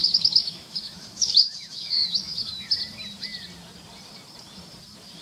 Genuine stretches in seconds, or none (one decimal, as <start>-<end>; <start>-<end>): 2.5-5.2